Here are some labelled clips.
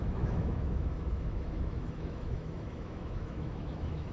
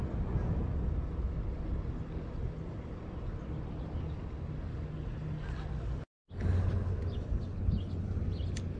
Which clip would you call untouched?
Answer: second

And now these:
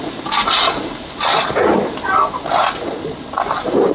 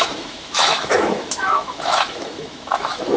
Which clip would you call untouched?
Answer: first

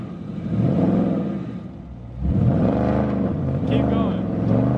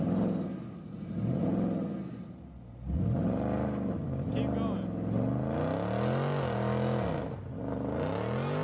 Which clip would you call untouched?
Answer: second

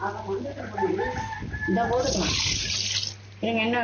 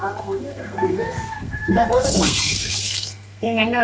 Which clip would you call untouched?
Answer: first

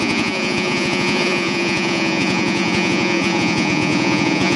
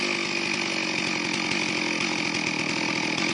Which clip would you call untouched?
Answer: second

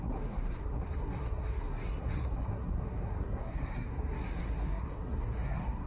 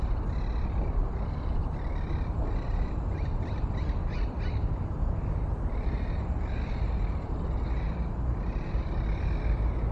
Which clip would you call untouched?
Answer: second